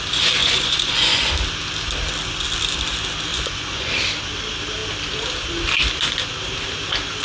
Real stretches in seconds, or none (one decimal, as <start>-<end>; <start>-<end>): 0.0-0.4; 1.3-3.3; 3.9-7.2